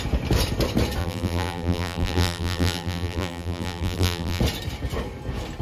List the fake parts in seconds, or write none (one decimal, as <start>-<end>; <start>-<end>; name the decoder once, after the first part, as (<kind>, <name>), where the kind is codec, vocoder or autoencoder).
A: 1.0-4.4 (vocoder, BigVGAN v2)